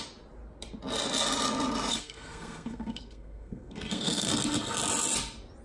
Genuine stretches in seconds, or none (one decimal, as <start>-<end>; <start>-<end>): 0.0-1.9; 4.3-5.6